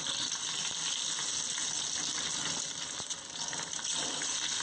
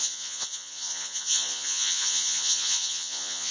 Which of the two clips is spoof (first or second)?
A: second